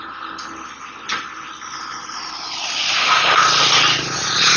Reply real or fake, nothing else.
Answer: real